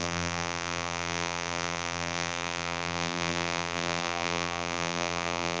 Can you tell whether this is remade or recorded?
remade